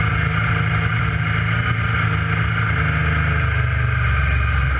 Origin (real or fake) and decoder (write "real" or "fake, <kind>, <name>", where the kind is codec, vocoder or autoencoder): real